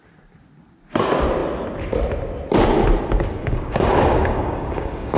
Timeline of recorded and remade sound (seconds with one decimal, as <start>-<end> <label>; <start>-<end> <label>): 0.0-3.4 recorded; 3.4-5.2 remade